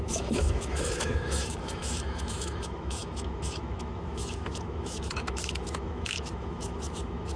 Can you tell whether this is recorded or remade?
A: remade